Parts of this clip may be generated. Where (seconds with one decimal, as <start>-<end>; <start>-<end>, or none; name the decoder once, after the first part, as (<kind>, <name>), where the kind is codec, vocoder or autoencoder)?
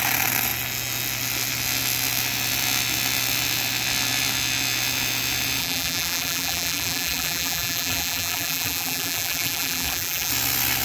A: 5.6-10.3 (vocoder, BigVGAN v2)